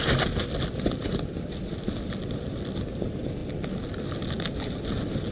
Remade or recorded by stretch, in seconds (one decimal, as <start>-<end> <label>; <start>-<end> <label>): 0.0-5.3 recorded

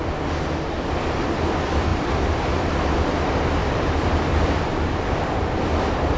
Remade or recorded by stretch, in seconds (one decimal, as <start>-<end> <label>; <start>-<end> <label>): 0.0-1.9 recorded; 1.9-2.7 remade; 2.7-3.6 recorded; 3.6-4.2 remade; 4.2-6.2 recorded